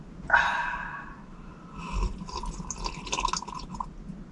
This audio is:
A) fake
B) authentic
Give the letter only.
B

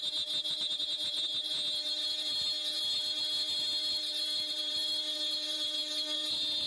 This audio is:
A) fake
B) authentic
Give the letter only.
A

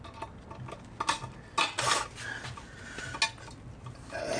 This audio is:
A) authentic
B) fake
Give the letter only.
A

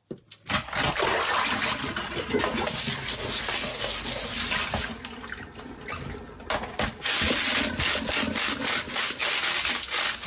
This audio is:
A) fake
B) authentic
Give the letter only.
B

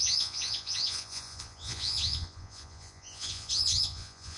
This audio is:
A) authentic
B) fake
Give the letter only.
B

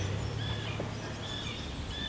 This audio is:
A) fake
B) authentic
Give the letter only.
B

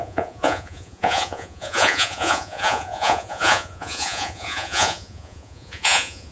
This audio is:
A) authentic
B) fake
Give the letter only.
B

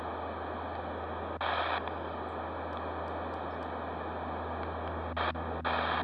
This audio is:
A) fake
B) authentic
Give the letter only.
B